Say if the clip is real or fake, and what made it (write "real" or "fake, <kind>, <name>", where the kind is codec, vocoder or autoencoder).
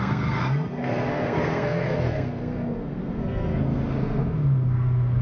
fake, codec, SNAC